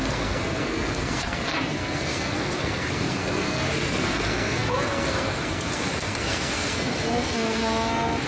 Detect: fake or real fake